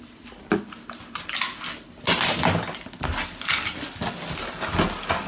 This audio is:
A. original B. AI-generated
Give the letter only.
A